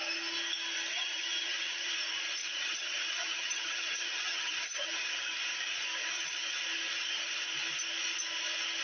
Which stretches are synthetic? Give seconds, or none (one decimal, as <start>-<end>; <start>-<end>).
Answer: 0.9-1.9; 2.4-5.1; 6.0-6.6